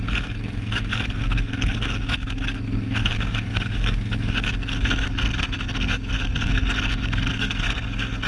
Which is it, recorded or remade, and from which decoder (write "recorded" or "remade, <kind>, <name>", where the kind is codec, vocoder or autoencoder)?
remade, codec, SNAC